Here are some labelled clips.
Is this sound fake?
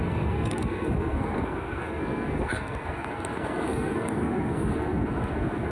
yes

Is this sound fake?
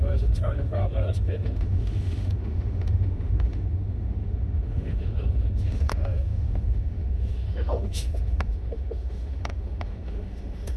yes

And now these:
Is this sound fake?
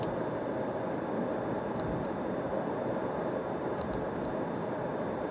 no